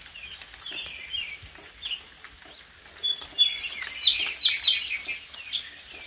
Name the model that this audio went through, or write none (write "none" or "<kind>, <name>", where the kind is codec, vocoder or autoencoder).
none